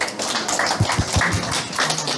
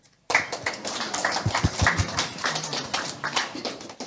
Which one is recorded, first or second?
first